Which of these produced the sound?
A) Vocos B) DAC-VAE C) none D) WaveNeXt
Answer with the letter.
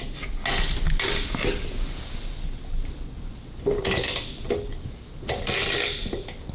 C